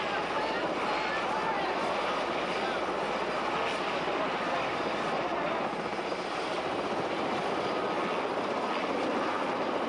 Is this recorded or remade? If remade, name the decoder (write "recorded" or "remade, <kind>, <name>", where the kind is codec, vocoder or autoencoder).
recorded